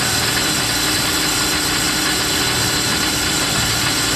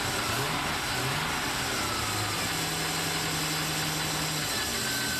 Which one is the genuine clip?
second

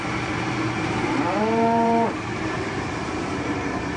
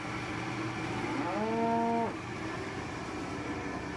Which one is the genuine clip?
second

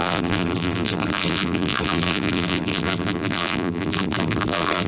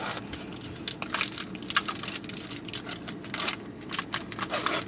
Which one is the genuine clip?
second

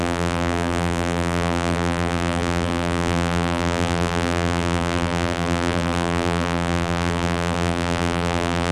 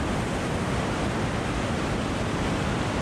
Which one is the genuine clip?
second